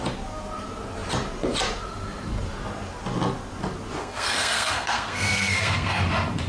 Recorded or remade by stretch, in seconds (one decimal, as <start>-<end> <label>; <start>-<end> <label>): 0.0-4.0 recorded; 4.0-6.0 remade; 6.0-6.5 recorded

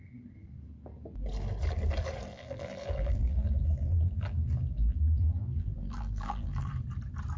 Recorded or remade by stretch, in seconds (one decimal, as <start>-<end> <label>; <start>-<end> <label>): 0.0-2.3 recorded; 2.3-6.7 remade; 6.7-7.4 recorded

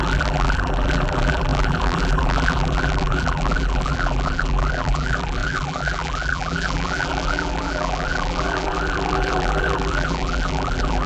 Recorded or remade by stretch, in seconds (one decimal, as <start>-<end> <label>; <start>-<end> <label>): 0.0-11.1 remade